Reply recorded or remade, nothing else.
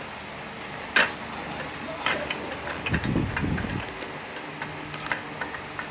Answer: recorded